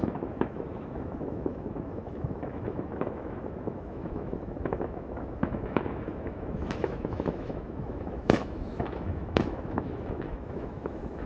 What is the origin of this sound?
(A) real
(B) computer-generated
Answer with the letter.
B